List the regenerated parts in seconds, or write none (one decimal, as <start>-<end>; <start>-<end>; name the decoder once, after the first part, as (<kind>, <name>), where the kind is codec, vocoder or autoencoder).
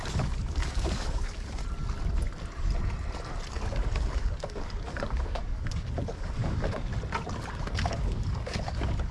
0.0-1.6 (codec, DAC); 3.5-6.9; 7.6-9.1